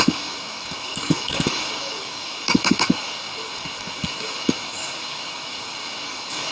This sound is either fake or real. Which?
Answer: fake